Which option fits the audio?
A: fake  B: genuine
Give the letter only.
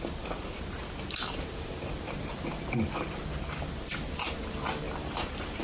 A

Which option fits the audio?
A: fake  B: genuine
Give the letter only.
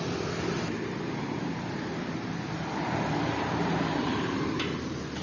A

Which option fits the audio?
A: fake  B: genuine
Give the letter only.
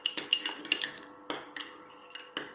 B